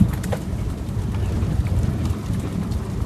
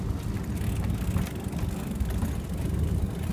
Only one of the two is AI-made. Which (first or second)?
first